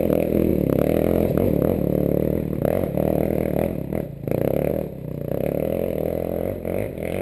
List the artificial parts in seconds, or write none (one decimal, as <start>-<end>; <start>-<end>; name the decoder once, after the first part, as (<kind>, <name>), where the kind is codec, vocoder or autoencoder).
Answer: none